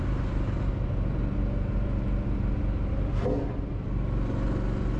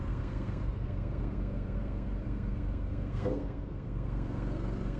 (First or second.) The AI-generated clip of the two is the second